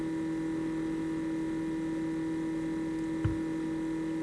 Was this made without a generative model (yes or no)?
yes